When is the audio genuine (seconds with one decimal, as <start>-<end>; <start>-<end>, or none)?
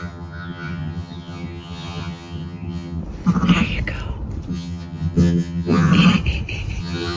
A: 3.0-4.5; 5.9-6.8